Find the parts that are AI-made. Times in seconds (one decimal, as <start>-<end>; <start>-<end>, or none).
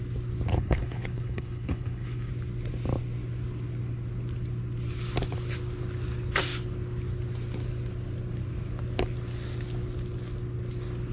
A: 0.5-2.3